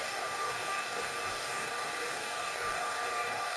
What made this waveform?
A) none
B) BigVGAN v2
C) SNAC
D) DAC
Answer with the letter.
D